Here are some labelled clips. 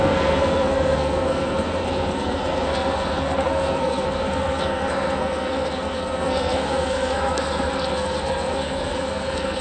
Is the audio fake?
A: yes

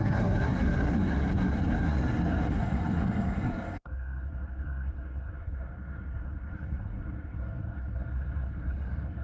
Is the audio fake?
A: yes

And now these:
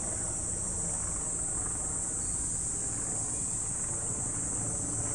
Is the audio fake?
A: no